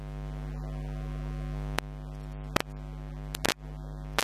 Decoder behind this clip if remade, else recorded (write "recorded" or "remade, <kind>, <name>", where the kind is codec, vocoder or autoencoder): recorded